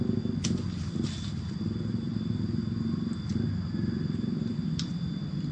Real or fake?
real